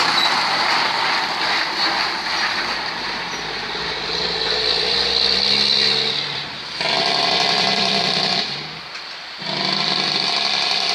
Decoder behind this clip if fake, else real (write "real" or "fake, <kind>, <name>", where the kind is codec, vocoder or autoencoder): fake, vocoder, BigVGAN v2